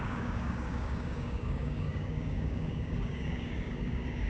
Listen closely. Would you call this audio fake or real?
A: fake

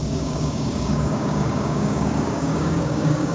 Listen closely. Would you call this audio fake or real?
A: fake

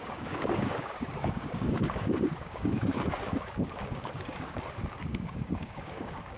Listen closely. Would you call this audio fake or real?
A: fake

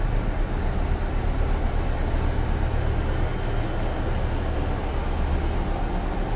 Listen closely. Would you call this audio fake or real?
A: real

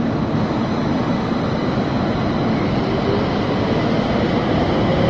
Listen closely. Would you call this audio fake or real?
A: real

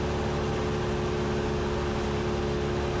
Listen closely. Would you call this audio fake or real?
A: real